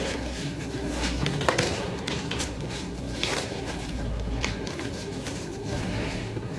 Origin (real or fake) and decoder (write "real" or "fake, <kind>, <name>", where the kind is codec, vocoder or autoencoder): fake, codec, SNAC